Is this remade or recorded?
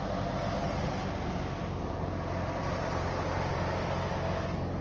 recorded